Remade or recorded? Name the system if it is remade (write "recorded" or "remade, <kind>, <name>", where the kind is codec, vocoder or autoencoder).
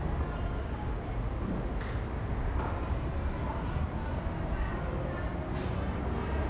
recorded